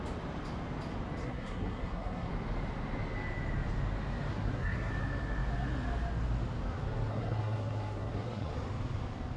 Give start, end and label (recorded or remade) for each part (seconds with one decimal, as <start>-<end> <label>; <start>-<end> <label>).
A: 0.0-1.2 recorded; 1.2-2.3 remade; 2.3-4.3 recorded; 4.3-4.9 remade; 4.9-7.1 recorded; 7.1-8.5 remade; 8.5-9.4 recorded